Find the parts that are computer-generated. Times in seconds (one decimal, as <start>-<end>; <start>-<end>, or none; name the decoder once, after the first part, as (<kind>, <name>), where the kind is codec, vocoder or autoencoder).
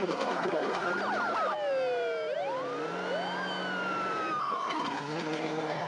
0.0-0.9 (codec, SNAC); 4.4-5.9